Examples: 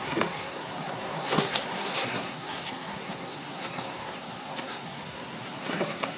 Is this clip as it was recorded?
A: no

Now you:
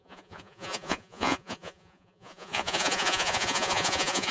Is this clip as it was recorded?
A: no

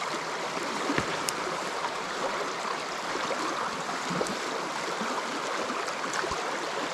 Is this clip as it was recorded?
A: yes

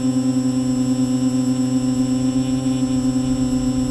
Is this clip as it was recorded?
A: yes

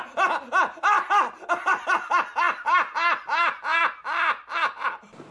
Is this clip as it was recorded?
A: yes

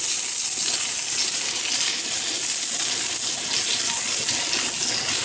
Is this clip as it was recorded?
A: yes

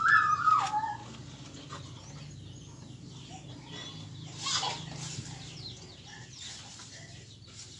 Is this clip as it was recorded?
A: yes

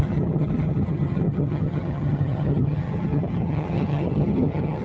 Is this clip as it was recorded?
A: no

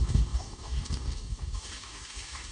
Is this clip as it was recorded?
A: no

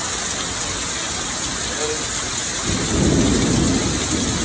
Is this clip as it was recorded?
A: yes